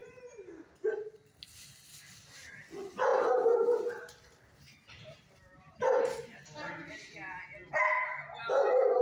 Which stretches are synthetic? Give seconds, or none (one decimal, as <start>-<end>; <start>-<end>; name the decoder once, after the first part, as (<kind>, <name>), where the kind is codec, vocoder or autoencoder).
3.1-5.8 (vocoder, BigVGAN v2)